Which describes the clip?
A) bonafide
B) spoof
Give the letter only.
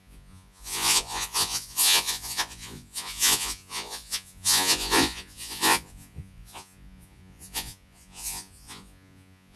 B